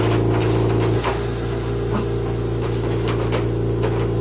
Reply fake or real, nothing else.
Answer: real